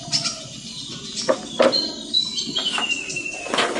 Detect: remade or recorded recorded